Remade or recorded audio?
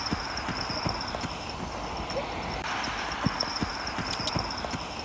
recorded